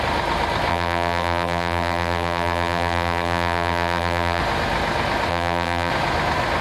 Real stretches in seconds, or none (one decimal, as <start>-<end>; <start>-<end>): 0.0-0.7; 4.4-5.3; 5.9-6.6